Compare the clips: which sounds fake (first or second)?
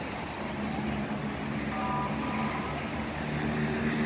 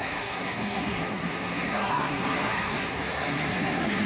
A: second